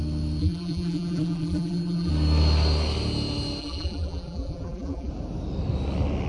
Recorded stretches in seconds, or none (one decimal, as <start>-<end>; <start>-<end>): 0.0-0.4; 2.1-3.6; 5.1-6.3